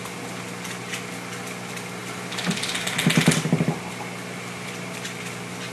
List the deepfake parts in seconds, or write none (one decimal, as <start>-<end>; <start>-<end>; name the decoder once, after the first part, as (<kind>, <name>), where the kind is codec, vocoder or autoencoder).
none